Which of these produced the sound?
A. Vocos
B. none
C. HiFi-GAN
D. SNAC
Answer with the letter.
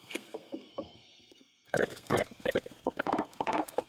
D